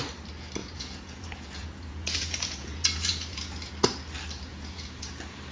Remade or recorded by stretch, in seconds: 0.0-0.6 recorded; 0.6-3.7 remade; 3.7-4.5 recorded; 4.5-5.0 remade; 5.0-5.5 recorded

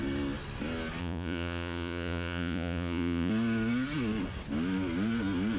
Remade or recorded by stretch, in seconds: 0.0-1.0 recorded; 1.0-3.3 remade; 3.3-5.6 recorded

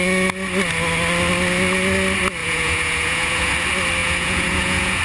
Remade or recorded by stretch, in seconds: 0.0-2.4 recorded; 2.4-3.5 remade; 3.5-4.0 recorded; 4.0-5.0 remade

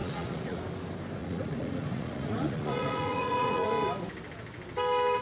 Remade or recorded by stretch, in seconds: 0.0-0.6 remade; 0.6-1.2 recorded; 1.2-3.7 remade; 3.7-5.2 recorded

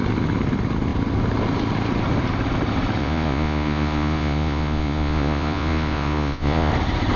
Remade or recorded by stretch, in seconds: 0.0-3.0 recorded; 3.0-6.7 remade; 6.7-7.2 recorded

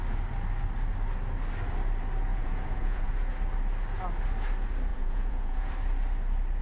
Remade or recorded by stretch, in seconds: 0.0-2.3 recorded; 2.3-3.1 remade; 3.1-4.9 recorded; 4.9-5.7 remade; 5.7-6.6 recorded

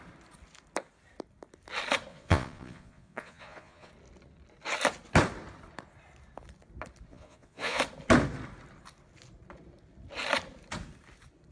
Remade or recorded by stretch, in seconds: 0.0-2.1 recorded; 2.1-3.9 remade; 3.9-7.1 recorded; 7.1-7.8 remade; 7.8-11.5 recorded

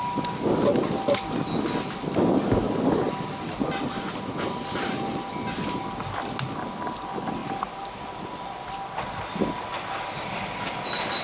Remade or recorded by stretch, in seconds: 0.0-11.2 recorded